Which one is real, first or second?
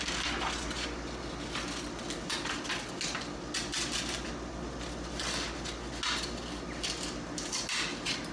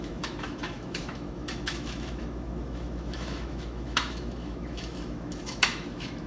first